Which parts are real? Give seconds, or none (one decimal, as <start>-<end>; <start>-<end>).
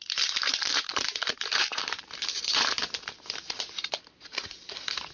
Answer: none